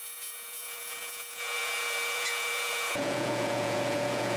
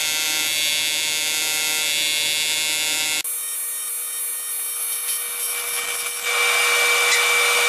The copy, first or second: first